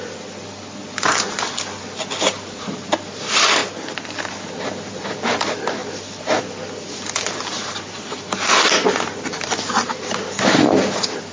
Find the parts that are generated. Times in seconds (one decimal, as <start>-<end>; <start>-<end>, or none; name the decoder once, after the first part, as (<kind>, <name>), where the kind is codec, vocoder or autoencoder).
0.8-1.8 (vocoder, BigVGAN v2); 5.8-10.5